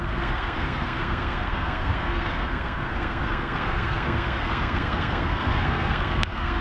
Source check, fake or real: fake